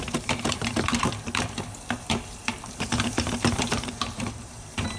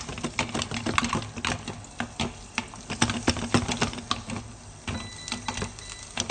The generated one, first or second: first